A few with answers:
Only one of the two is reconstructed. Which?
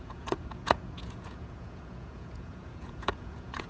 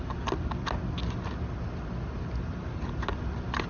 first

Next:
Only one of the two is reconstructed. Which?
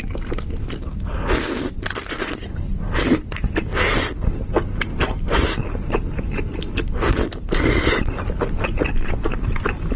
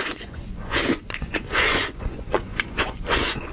second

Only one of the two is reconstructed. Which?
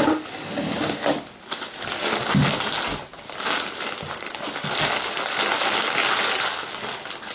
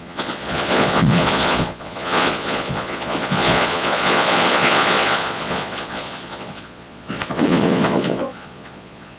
second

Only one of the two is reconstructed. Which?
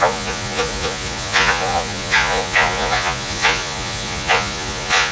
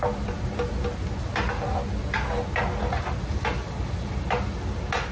first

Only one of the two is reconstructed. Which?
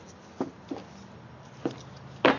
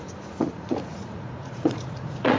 second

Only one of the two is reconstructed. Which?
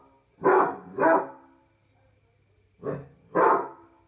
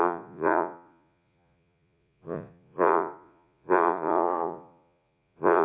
second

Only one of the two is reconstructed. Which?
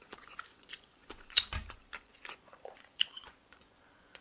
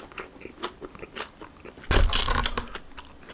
first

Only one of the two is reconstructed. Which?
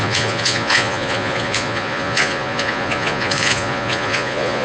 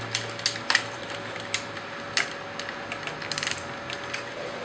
first